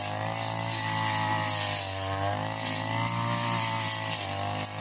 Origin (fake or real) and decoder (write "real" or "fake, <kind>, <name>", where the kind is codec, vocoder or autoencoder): real